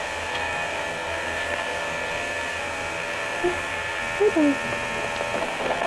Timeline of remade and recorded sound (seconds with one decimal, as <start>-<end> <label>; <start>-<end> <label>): 0.0-4.0 remade; 4.0-5.4 recorded; 5.4-5.9 remade